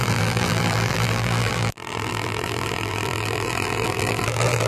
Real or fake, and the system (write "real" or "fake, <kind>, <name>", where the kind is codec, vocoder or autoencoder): fake, vocoder, BigVGAN v2